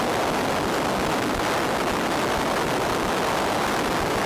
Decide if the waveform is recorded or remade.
recorded